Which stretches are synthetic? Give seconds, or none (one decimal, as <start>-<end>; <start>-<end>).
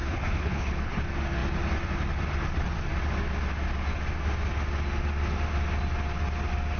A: 0.0-1.0